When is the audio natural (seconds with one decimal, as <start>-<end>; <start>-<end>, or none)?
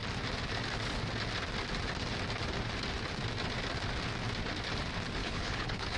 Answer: 0.0-5.2